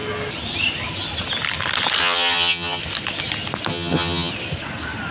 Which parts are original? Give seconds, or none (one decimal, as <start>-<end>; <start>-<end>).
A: 0.0-2.0; 2.8-3.7; 4.3-5.1